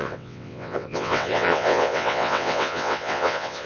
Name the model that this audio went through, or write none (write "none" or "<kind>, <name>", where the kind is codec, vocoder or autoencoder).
vocoder, WaveNeXt